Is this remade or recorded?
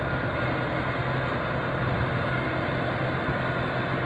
recorded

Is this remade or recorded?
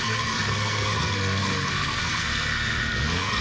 remade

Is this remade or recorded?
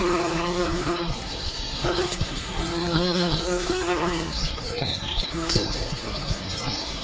remade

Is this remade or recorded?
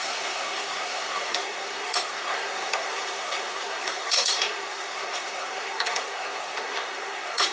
remade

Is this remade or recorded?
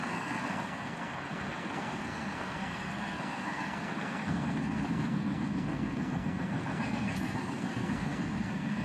remade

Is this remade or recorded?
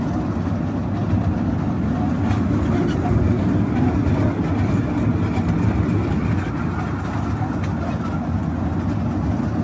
recorded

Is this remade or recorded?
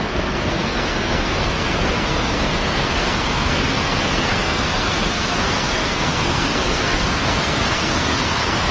remade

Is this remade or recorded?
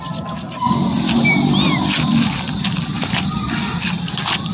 recorded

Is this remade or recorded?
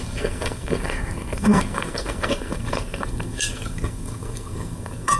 remade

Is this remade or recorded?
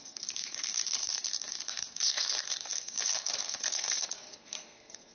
remade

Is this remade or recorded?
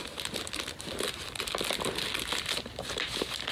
recorded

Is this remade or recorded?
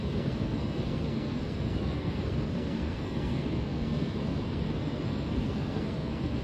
remade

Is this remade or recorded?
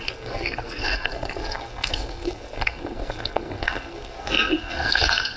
remade